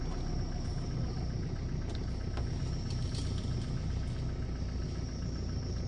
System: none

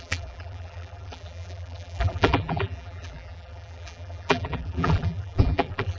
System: vocoder, BigVGAN v2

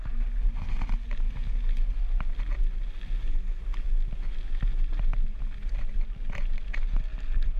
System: none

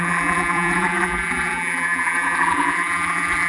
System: vocoder, BigVGAN v2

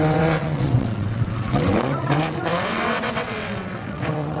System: vocoder, WaveNeXt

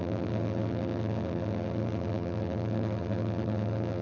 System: vocoder, BigVGAN v2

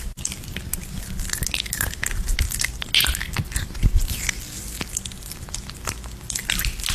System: none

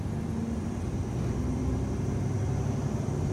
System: none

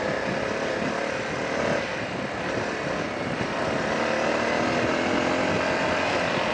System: none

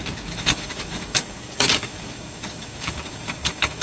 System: codec, DAC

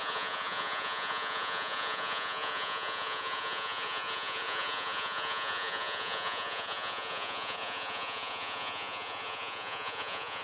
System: vocoder, Vocos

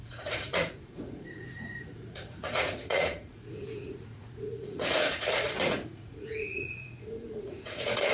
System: vocoder, Vocos